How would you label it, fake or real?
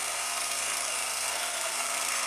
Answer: fake